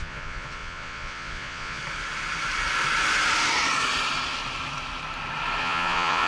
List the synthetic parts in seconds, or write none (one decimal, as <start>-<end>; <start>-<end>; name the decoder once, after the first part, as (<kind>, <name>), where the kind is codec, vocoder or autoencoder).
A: 0.0-1.8 (vocoder, Vocos); 5.6-6.3

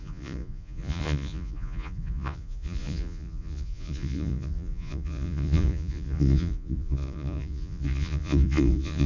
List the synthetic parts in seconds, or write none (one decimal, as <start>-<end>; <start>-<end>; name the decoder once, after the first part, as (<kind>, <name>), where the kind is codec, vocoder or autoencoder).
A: 0.0-9.1 (vocoder, Vocos)

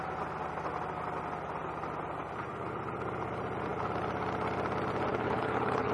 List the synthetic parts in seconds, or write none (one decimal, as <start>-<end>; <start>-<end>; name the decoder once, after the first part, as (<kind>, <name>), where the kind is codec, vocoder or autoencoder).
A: 5.1-5.9 (codec, HILCodec)

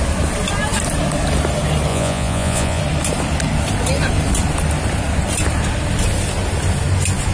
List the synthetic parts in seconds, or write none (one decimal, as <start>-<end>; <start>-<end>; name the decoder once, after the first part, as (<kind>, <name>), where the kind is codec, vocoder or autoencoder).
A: 1.9-2.8 (vocoder, Vocos)

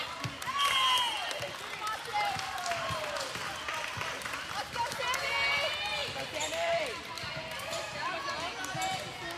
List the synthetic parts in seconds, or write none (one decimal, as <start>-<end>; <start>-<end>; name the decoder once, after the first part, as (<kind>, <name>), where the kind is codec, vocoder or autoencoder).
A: 6.0-7.1 (vocoder, BigVGAN v2)

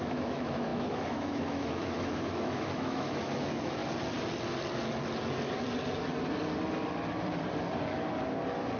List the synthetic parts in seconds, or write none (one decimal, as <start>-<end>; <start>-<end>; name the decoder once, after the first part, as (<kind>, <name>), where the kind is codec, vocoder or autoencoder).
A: 0.0-3.8 (autoencoder, DAC-VAE)

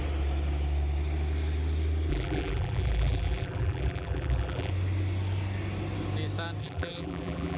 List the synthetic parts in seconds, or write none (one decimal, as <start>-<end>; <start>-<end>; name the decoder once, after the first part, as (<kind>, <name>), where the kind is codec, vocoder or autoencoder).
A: 2.1-4.7 (vocoder, BigVGAN v2); 6.6-7.6

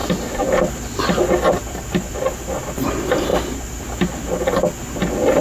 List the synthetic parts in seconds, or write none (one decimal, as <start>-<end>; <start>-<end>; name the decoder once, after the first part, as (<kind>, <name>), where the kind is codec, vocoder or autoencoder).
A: 1.5-3.3 (vocoder, BigVGAN v2); 5.0-5.4